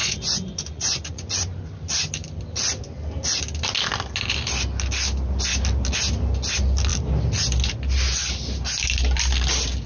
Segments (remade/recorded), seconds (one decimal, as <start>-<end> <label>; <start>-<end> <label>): 0.0-1.3 remade; 1.3-9.9 recorded